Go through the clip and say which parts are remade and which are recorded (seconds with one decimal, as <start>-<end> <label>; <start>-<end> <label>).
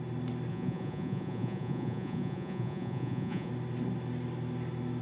0.0-0.5 recorded; 0.5-3.5 remade; 3.5-5.0 recorded